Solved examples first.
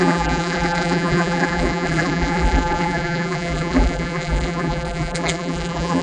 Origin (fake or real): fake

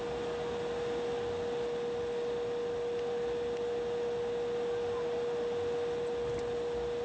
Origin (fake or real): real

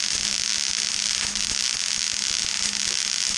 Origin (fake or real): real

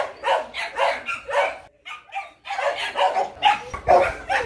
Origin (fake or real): real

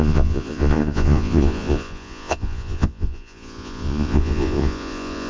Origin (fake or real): fake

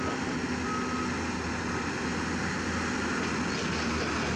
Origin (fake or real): real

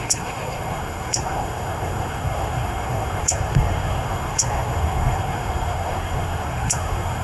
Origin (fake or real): fake